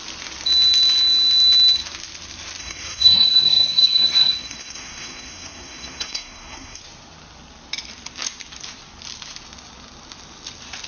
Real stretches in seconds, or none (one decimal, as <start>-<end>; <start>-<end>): 0.0-2.6; 6.8-10.9

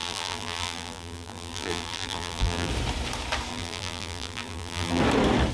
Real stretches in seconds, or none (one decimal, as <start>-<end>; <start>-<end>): 2.7-3.5; 5.0-5.5

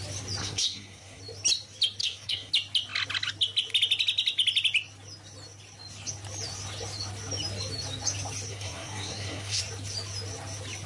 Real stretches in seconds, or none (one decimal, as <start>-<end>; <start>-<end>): 0.0-0.4; 1.2-2.0; 2.5-8.5; 9.6-10.9

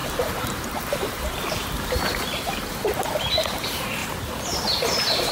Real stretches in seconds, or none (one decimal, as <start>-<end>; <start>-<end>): 4.0-5.3